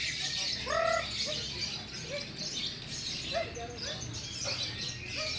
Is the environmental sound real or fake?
real